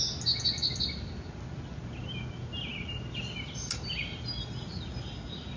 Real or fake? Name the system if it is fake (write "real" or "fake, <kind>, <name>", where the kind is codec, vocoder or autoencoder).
real